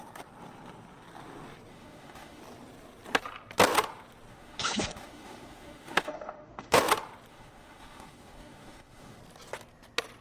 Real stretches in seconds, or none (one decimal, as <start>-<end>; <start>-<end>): 0.0-1.7; 2.4-4.3; 6.8-7.3; 9.2-10.2